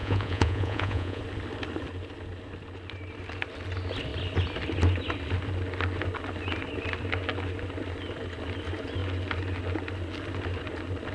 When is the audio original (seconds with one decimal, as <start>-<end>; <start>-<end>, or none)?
1.2-11.1